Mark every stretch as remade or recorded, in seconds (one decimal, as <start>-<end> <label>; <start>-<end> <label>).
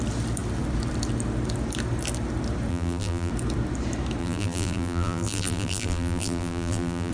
0.0-2.7 recorded; 2.7-3.3 remade; 3.3-4.2 recorded; 4.2-7.1 remade